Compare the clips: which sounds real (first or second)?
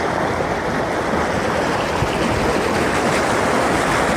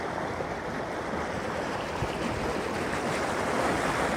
first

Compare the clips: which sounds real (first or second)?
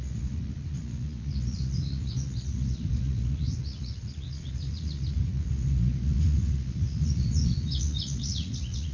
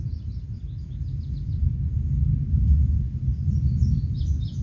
second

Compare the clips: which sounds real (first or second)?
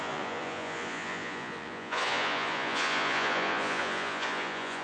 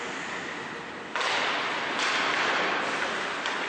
second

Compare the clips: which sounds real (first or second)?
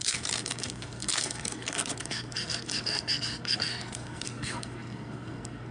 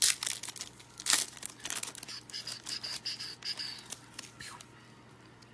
second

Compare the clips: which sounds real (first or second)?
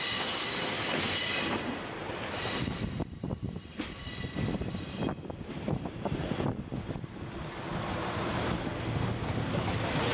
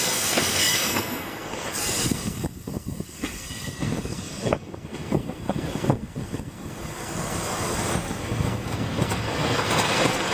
first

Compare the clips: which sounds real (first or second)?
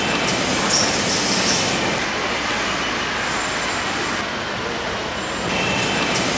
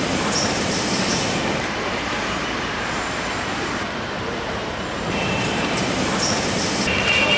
first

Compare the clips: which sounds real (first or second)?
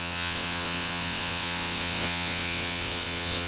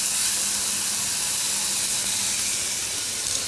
second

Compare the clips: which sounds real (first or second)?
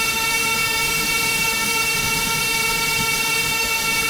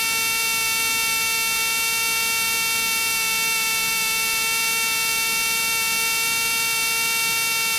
second